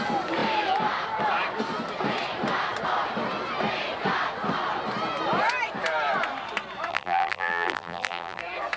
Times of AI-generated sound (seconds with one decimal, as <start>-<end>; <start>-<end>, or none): 6.9-8.4